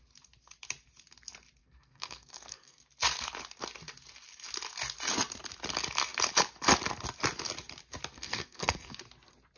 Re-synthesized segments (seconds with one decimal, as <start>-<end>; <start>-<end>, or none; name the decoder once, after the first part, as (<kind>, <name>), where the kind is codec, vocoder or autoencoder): 1.6-2.8 (codec, SNAC); 8.1-9.0